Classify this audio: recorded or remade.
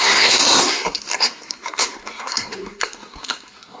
remade